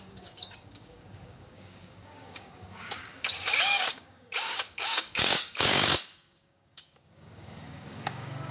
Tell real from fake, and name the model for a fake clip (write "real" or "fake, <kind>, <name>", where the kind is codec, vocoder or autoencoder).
fake, codec, DAC